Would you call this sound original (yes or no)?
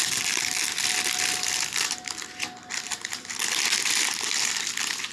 yes